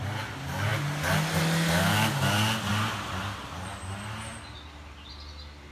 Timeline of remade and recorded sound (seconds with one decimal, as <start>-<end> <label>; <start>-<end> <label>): 0.0-5.7 recorded